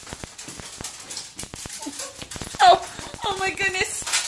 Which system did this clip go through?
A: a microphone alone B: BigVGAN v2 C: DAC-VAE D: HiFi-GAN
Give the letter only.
A